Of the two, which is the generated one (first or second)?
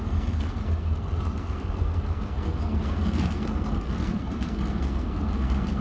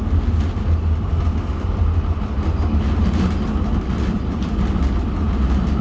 first